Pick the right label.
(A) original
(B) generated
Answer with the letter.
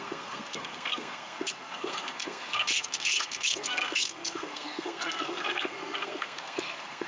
B